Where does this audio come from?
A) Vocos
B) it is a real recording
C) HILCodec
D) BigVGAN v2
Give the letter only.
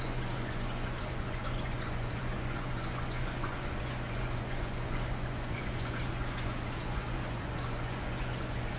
A